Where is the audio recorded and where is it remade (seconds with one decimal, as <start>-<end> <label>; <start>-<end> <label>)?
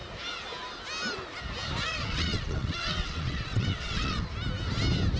0.0-1.9 recorded; 1.9-4.2 remade; 4.2-5.2 recorded